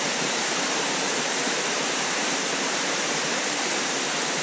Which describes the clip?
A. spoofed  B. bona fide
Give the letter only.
A